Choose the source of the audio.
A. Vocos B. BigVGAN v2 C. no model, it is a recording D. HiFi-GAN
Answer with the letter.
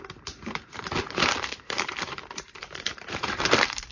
B